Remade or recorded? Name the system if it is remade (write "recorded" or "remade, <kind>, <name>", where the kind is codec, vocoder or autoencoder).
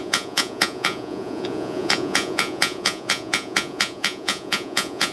remade, vocoder, Vocos